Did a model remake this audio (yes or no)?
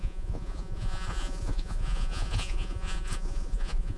yes